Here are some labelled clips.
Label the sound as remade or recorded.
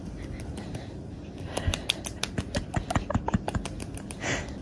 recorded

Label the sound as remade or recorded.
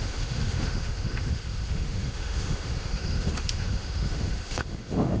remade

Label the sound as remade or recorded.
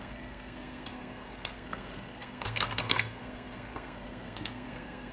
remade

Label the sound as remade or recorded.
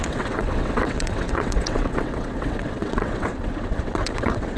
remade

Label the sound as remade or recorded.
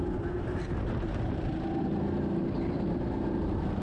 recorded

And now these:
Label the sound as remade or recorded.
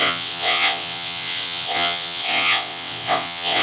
remade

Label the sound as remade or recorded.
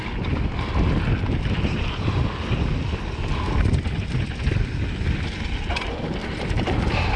recorded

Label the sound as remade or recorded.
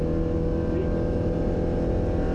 recorded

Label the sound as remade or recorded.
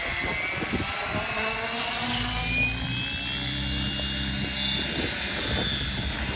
recorded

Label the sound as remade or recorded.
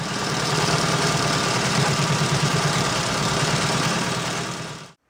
remade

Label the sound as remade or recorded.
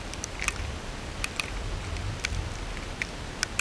recorded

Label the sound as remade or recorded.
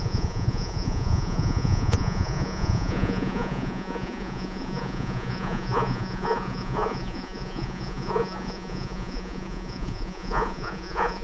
remade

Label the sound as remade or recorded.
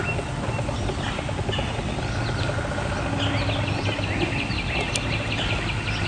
recorded